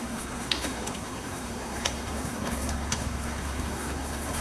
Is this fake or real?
fake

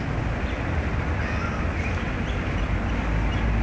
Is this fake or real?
real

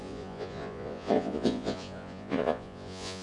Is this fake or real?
fake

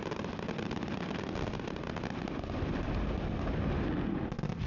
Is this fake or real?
real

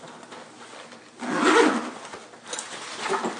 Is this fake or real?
real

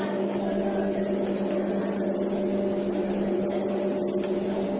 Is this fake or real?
real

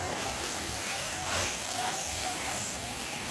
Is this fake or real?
fake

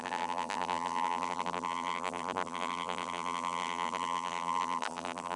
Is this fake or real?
fake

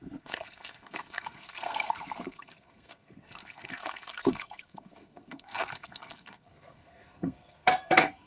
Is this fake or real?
fake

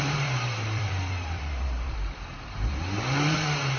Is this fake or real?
fake